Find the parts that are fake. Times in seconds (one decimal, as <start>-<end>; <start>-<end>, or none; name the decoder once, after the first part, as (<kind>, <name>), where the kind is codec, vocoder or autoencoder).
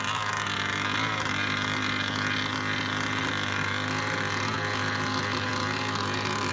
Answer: none